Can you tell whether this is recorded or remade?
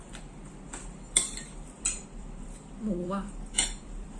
remade